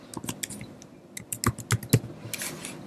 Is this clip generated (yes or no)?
no